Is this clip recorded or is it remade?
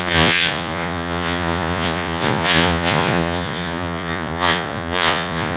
remade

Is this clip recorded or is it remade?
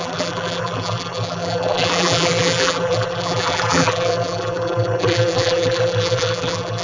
remade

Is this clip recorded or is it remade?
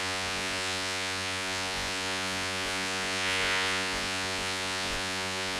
remade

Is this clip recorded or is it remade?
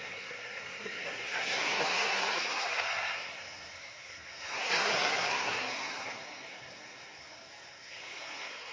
remade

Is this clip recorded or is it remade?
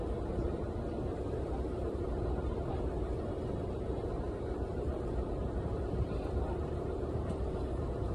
remade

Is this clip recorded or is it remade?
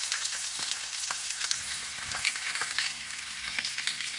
remade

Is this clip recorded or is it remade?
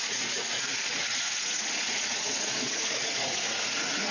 remade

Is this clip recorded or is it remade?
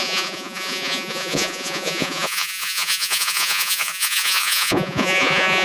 remade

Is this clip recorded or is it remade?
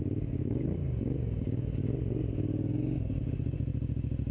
recorded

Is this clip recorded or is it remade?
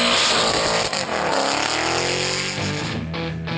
recorded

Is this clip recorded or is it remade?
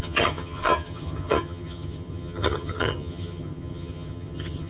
remade